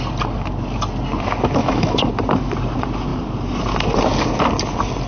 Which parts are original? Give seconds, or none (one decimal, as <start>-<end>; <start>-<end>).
0.0-1.6; 2.1-5.1